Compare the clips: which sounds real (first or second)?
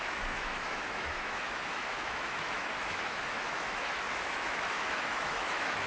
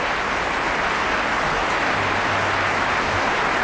second